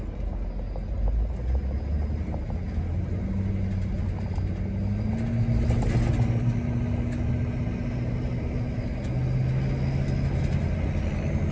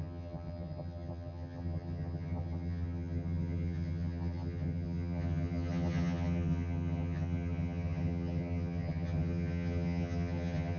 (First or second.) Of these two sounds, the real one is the first